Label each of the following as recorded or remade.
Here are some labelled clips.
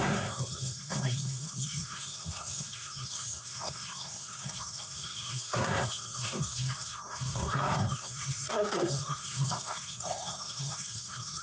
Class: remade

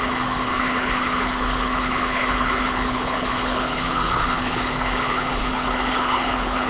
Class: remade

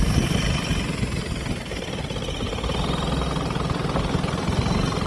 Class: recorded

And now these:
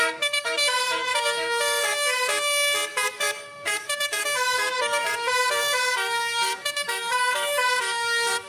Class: remade